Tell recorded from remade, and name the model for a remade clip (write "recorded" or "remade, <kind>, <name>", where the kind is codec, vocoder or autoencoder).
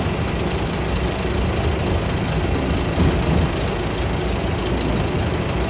recorded